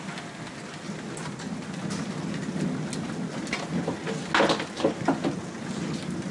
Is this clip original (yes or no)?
yes